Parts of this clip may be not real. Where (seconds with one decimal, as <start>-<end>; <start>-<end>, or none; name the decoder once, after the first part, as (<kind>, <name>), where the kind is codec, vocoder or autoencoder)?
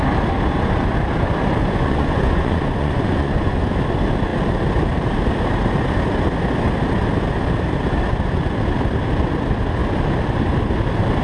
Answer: 1.6-3.6 (vocoder, Vocos)